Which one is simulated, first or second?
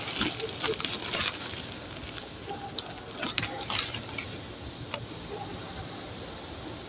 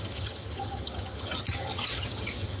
second